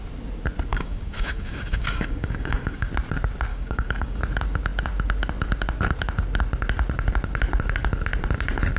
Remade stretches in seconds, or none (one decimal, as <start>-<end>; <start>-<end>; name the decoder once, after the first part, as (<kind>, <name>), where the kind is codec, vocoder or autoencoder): 0.7-2.9 (codec, DAC); 3.5-4.2